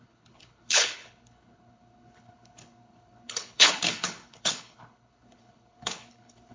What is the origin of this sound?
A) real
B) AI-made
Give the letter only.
B